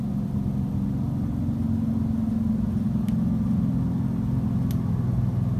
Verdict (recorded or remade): recorded